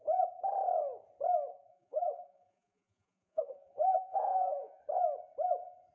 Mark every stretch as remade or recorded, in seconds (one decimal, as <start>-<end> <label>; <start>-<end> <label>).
0.0-1.5 recorded; 1.5-4.8 remade; 4.8-5.9 recorded